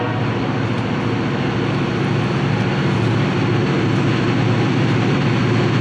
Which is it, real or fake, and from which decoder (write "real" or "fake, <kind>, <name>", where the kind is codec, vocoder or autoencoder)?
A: real